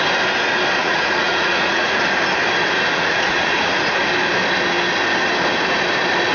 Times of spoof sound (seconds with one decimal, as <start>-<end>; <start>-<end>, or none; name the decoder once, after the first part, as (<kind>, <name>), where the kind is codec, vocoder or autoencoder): 0.8-2.0 (vocoder, Vocos); 2.9-3.8